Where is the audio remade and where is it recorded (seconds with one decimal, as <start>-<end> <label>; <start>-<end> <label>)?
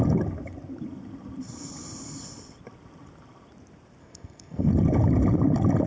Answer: 0.0-4.0 recorded; 4.0-4.7 remade; 4.7-5.9 recorded